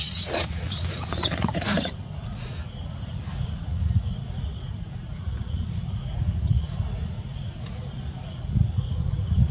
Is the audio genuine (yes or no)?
no